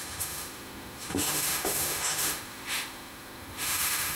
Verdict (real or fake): fake